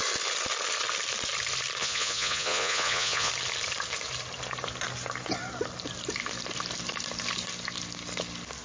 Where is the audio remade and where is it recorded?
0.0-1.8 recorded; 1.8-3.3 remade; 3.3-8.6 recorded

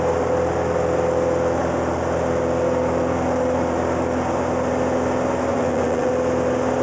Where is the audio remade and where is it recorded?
0.0-5.5 recorded; 5.5-6.1 remade; 6.1-6.8 recorded

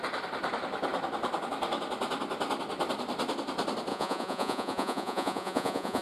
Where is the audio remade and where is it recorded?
0.0-3.9 recorded; 3.9-6.0 remade

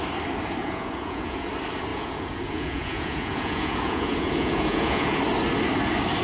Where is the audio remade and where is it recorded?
0.0-0.6 recorded; 0.6-1.5 remade; 1.5-1.9 recorded; 1.9-5.2 remade; 5.2-6.2 recorded

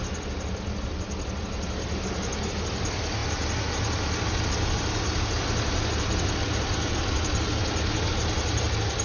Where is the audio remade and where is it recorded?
0.0-9.0 recorded

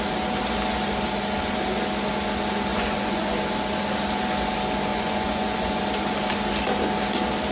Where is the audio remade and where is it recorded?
0.0-2.7 recorded; 2.7-3.3 remade; 3.3-4.9 recorded; 4.9-5.8 remade; 5.8-7.5 recorded